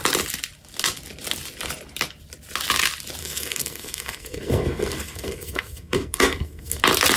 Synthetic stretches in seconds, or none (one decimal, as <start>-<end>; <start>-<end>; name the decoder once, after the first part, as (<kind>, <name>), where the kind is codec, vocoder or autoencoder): 3.2-6.8 (codec, SNAC)